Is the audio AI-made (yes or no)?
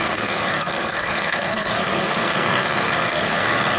yes